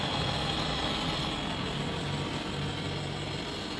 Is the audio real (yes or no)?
yes